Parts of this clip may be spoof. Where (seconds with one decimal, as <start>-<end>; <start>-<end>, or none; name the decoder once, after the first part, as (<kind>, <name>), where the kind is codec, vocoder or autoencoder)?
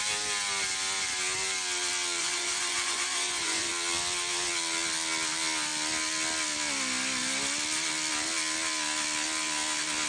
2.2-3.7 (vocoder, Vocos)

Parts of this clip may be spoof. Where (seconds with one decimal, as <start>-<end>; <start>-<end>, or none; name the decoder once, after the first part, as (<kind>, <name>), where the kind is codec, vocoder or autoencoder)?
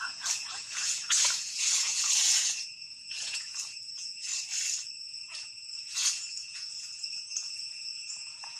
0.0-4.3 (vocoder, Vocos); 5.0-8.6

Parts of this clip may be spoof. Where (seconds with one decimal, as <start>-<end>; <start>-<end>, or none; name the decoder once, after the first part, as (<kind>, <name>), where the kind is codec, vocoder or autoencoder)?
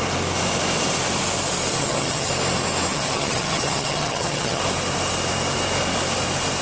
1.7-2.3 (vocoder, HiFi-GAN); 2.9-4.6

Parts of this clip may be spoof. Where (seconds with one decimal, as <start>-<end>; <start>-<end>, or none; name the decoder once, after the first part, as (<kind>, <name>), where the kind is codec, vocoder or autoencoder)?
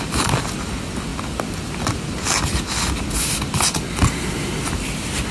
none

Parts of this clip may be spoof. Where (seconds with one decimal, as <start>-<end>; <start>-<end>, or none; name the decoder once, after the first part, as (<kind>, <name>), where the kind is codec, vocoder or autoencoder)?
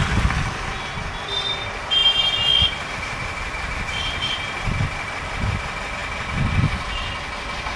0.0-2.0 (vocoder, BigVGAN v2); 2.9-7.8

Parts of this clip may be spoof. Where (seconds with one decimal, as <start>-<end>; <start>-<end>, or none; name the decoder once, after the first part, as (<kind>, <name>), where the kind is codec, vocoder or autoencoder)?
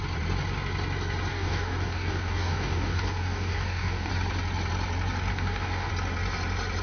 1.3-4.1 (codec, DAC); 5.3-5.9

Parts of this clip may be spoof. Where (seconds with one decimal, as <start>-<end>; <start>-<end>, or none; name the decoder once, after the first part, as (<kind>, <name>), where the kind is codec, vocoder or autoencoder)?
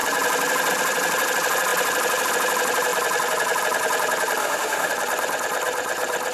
4.4-4.9 (autoencoder, DAC-VAE)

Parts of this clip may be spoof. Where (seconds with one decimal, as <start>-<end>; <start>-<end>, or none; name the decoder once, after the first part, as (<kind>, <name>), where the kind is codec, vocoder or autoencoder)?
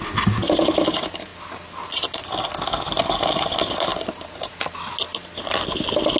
3.9-4.5 (vocoder, BigVGAN v2)